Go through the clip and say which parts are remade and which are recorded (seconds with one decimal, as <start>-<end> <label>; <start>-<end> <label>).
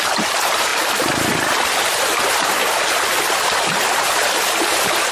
0.0-5.1 recorded